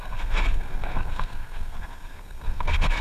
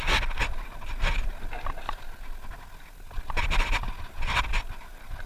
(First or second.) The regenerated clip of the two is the first